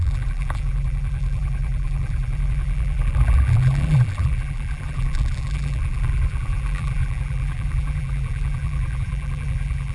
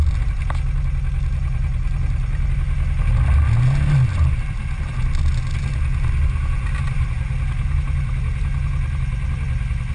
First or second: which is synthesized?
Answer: first